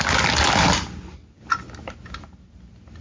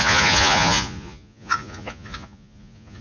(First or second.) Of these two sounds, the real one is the first